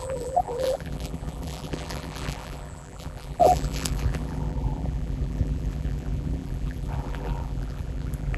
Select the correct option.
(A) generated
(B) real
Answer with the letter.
A